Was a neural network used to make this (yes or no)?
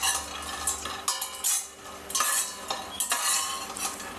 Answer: no